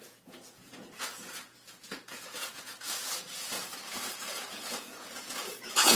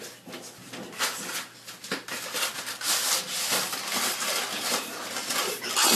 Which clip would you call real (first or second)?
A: second